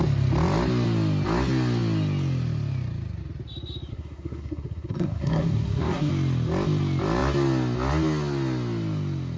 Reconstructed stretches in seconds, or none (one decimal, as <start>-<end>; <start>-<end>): 3.9-6.1